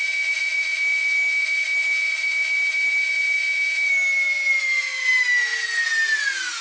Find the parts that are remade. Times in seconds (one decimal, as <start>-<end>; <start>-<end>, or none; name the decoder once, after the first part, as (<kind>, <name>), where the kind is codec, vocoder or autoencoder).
none